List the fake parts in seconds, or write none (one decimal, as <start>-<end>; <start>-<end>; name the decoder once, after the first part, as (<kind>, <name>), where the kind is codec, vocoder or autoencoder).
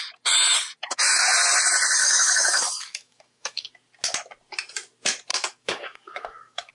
2.0-3.7 (codec, DAC); 5.3-6.7